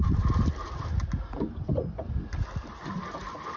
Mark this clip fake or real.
real